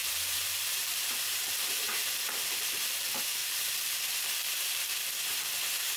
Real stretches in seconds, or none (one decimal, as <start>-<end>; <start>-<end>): 4.8-6.0